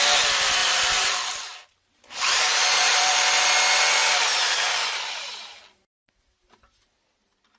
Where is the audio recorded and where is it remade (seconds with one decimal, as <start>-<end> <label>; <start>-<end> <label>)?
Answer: 0.0-0.6 recorded; 0.6-3.4 remade; 3.4-4.0 recorded; 4.0-4.7 remade; 4.7-7.6 recorded